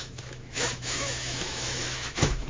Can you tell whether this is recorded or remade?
remade